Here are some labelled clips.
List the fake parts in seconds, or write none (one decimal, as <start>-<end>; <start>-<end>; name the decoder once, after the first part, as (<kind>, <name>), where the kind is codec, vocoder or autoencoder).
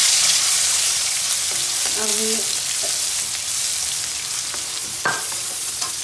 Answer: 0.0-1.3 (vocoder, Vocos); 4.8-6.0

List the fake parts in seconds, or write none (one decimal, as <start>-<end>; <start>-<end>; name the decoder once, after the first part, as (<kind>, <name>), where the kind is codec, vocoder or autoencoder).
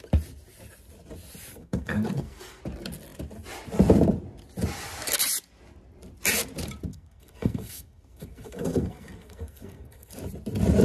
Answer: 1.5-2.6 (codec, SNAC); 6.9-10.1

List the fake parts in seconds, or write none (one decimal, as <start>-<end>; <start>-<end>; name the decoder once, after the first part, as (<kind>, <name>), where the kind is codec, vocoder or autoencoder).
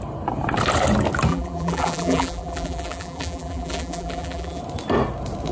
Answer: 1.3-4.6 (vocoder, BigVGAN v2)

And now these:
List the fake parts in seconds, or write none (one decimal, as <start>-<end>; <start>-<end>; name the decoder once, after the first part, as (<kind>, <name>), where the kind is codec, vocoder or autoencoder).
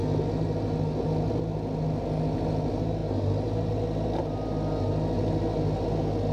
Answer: none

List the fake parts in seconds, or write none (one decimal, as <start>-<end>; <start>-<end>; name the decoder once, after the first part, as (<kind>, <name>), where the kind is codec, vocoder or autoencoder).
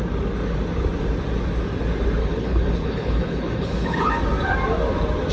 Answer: 2.2-4.1 (codec, HILCodec)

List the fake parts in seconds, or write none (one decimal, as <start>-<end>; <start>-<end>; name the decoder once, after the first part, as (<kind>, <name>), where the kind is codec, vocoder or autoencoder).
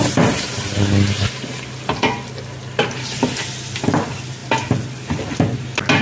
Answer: none